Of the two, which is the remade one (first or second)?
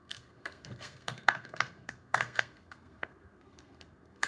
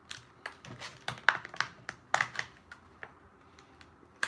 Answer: first